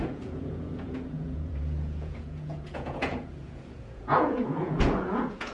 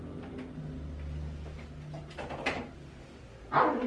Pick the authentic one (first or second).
second